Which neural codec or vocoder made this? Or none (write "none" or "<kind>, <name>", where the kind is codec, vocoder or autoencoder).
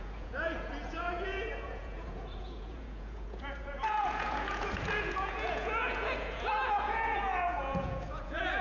vocoder, Vocos